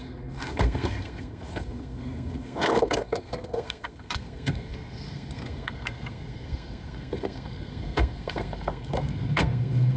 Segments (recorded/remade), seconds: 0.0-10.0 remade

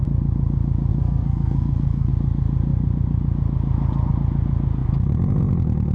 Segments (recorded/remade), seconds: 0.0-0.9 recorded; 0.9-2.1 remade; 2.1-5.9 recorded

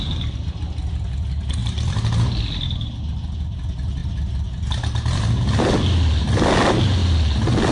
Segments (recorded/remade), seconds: 0.0-7.7 recorded